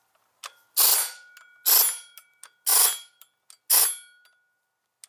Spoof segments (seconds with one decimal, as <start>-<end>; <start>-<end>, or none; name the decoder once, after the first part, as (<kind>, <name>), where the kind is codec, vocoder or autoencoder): none